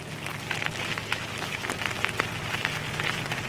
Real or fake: real